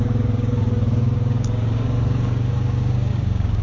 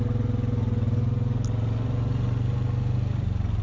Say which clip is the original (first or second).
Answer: second